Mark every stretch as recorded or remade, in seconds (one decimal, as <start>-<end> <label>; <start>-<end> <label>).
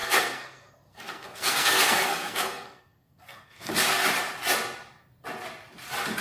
0.0-3.7 remade; 3.7-6.2 recorded